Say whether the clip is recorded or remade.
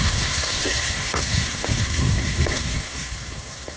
remade